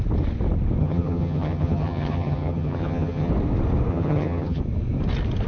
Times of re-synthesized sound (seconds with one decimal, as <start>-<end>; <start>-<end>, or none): 0.8-3.3; 3.9-4.6